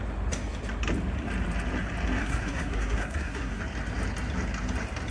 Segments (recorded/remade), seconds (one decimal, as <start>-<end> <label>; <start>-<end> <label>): 0.0-2.2 recorded; 2.2-3.6 remade; 3.6-5.1 recorded

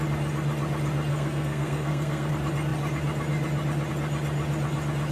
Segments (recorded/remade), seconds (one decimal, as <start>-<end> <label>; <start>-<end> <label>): 0.0-1.1 recorded; 1.1-2.3 remade; 2.3-5.1 recorded

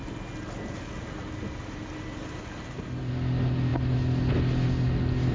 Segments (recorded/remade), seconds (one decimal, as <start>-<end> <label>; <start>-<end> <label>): 0.0-5.3 recorded

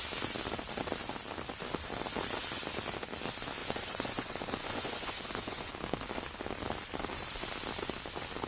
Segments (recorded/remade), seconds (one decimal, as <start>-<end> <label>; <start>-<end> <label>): 0.0-3.6 recorded; 3.6-5.7 remade; 5.7-8.5 recorded

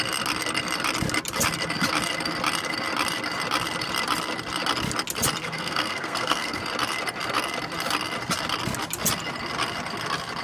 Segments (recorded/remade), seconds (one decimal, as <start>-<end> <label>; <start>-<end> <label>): 0.0-5.4 recorded; 5.4-6.6 remade; 6.6-10.4 recorded

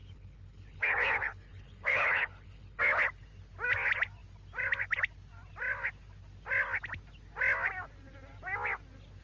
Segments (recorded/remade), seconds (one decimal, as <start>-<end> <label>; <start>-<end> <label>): 0.0-2.8 remade; 2.8-9.2 recorded

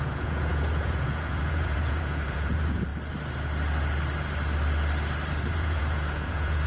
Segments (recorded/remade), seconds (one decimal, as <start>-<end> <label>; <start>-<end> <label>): 0.0-2.9 remade; 2.9-5.5 recorded; 5.5-6.7 remade